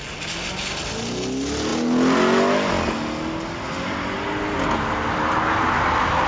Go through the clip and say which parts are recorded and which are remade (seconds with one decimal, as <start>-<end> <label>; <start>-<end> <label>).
0.0-6.3 recorded